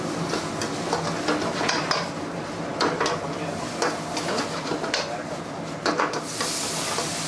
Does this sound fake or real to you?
real